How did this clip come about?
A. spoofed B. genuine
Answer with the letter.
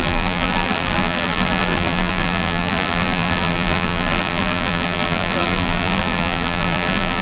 A